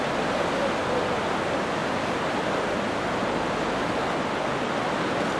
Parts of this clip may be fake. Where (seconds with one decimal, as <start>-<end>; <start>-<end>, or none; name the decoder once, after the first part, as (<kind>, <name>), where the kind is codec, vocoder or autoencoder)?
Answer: none

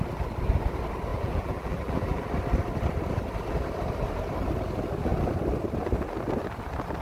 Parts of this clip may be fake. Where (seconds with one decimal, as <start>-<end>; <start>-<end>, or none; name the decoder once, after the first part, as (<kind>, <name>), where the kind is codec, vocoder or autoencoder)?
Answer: 1.1-2.2 (vocoder, BigVGAN v2)

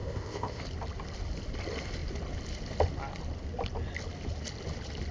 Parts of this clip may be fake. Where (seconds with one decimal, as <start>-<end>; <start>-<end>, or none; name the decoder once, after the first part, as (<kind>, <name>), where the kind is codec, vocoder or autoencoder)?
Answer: 0.0-0.6 (codec, ZipCodec)

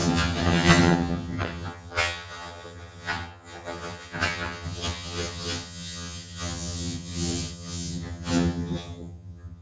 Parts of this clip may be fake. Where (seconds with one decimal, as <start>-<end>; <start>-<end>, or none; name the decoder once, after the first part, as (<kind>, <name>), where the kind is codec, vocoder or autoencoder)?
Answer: 0.0-9.6 (vocoder, HiFi-GAN)

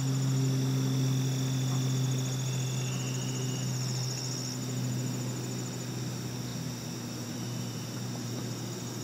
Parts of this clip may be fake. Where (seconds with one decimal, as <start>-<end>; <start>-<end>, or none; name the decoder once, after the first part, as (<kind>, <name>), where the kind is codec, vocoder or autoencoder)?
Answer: 6.5-8.4 (vocoder, BigVGAN v2)

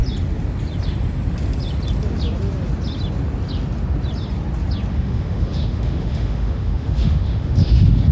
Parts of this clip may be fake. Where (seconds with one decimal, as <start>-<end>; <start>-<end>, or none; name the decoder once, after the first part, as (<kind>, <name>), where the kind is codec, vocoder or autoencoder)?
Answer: 4.9-8.1 (autoencoder, DAC-VAE)

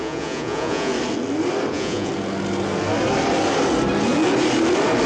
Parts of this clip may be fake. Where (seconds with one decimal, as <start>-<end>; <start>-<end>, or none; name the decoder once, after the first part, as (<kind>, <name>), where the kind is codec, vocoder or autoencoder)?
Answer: 0.0-0.9 (vocoder, Vocos); 1.7-2.1